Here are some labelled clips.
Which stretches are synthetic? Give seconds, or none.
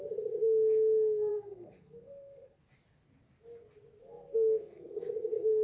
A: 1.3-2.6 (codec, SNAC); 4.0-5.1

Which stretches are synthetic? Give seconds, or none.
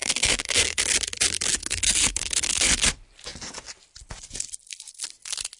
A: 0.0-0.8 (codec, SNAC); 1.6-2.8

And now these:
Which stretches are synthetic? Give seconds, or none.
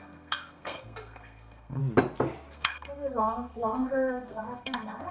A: 0.0-1.8 (codec, SNAC); 2.5-5.1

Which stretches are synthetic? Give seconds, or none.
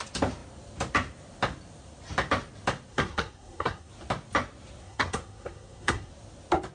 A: 2.9-3.9 (codec, SNAC); 4.8-6.1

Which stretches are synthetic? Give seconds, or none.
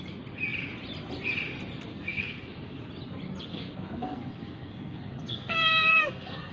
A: 1.9-2.8 (codec, SNAC); 3.5-6.5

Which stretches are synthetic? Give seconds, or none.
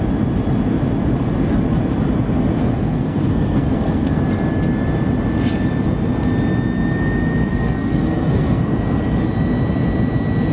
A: 2.6-4.2 (codec, SNAC); 7.5-8.6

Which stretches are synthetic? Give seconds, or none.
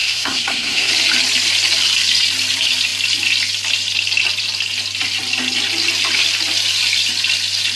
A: 0.0-0.9 (codec, SNAC)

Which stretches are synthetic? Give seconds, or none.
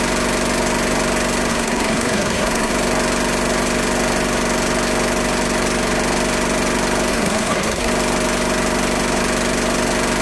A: 1.5-2.7 (codec, SNAC); 7.1-7.9